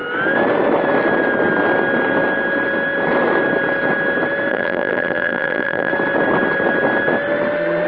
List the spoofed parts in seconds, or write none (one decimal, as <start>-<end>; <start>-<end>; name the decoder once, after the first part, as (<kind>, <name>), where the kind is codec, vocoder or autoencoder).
4.5-5.9 (vocoder, BigVGAN v2)